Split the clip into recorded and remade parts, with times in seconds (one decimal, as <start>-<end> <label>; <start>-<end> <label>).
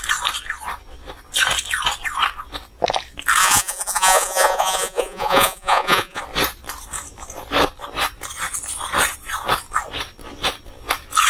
0.0-3.4 recorded; 3.4-6.2 remade; 6.2-11.3 recorded